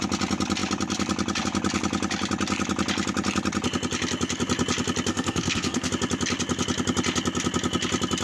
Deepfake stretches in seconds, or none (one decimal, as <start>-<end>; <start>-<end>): 5.1-5.9